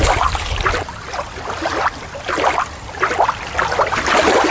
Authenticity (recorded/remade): recorded